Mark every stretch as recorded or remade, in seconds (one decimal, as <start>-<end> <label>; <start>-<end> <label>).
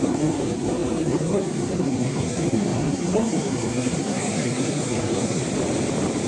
0.0-5.4 remade; 5.4-6.3 recorded